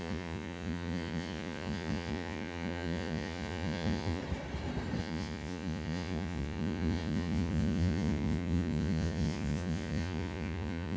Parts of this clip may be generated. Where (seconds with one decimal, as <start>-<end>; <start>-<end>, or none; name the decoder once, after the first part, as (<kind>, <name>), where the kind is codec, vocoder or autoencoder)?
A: 0.0-4.2 (vocoder, Vocos); 5.0-11.0